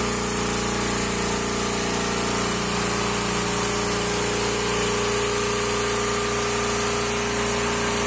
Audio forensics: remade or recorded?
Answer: recorded